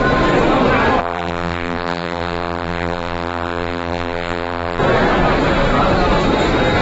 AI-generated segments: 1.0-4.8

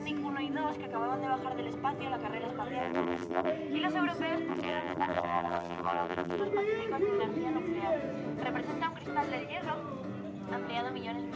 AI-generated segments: 2.8-3.5; 4.5-6.4

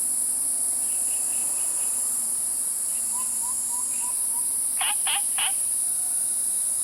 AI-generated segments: 1.4-4.9

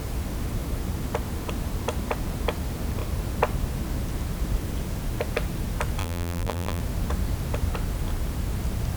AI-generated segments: 6.0-6.8

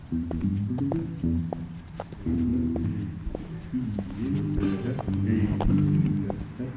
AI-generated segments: 0.0-0.5; 1.6-6.8